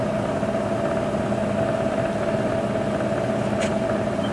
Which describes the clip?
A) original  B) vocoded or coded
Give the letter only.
A